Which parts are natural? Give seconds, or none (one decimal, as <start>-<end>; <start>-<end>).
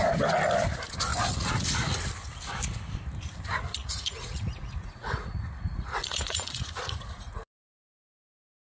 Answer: 0.0-1.1; 1.9-3.8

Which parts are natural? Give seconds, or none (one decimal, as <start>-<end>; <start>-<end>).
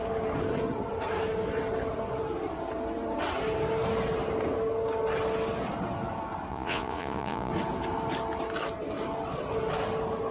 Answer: 0.0-6.5; 7.5-10.3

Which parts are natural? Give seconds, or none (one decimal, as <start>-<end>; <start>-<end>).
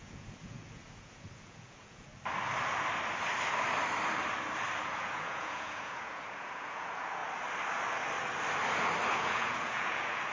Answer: 2.1-4.8; 7.2-9.1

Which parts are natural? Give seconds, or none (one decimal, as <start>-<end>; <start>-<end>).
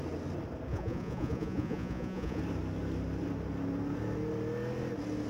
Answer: 0.0-0.7; 2.4-5.3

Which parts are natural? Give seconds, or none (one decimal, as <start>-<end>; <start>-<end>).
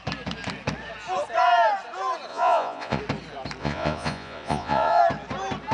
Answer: 0.0-2.3; 3.0-3.6; 5.0-5.7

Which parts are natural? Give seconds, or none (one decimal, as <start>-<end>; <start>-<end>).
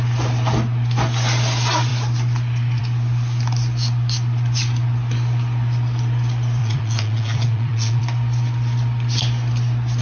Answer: 0.0-6.6; 8.0-10.0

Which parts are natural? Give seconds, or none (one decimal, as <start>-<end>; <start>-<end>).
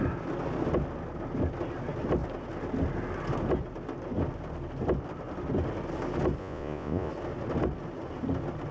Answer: 0.0-6.4; 7.1-8.7